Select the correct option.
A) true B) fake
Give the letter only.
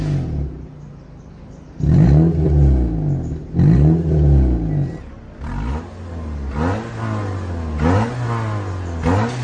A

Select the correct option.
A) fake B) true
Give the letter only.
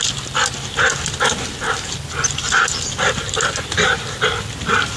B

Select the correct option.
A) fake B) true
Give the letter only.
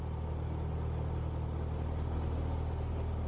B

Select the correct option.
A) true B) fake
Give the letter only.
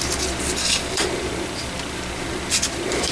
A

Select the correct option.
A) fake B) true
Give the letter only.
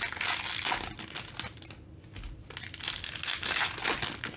B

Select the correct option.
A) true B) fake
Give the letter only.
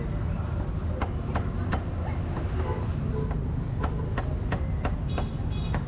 A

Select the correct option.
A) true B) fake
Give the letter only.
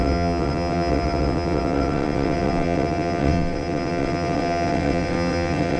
B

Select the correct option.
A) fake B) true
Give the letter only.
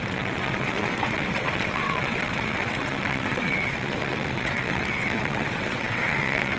A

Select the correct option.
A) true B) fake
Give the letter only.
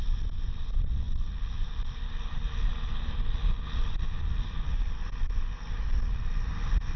A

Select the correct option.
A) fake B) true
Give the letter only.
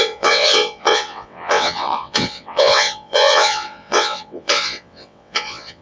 A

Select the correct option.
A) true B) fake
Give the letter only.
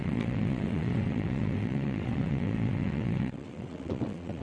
B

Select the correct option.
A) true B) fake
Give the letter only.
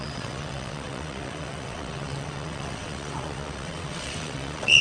B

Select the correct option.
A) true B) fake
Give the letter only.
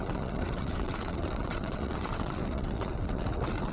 B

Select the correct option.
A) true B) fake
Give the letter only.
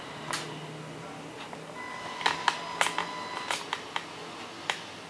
A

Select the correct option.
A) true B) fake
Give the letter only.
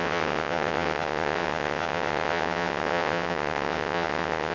B